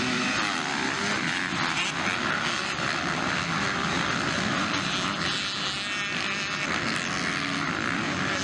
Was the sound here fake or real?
real